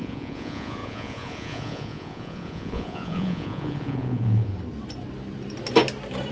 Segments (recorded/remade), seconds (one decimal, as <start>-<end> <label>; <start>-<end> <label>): 0.0-4.5 remade; 4.5-6.3 recorded

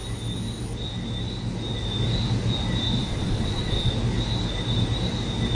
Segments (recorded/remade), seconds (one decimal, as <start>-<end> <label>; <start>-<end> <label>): 0.0-3.0 recorded; 3.0-3.9 remade; 3.9-5.5 recorded

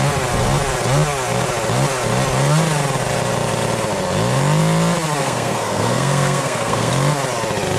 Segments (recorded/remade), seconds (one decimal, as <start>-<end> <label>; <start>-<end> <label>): 0.0-5.2 recorded; 5.2-6.9 remade; 6.9-7.8 recorded

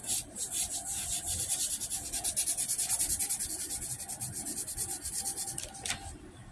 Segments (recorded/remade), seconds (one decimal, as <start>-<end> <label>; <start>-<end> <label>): 0.0-6.5 recorded

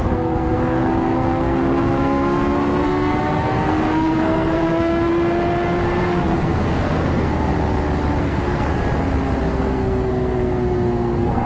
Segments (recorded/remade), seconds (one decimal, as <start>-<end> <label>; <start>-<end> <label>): 0.0-5.1 remade; 5.1-6.0 recorded; 6.0-7.5 remade; 7.5-8.2 recorded; 8.2-8.7 remade; 8.7-9.5 recorded; 9.5-11.5 remade

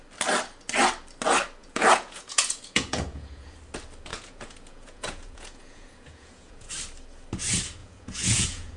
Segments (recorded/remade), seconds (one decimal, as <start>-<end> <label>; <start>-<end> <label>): 0.0-1.6 recorded; 1.6-3.6 remade; 3.6-4.1 recorded; 4.1-6.7 remade; 6.7-7.8 recorded; 7.8-8.8 remade

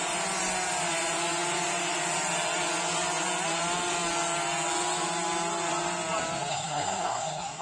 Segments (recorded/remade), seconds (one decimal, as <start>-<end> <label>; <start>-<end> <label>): 0.0-6.5 recorded; 6.5-7.6 remade

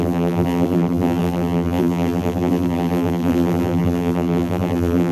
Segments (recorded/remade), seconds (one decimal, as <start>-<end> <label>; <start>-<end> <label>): 0.0-5.1 remade